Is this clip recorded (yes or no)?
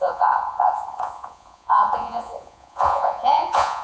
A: no